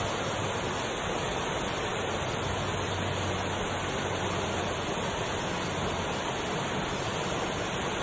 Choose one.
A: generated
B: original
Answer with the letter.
B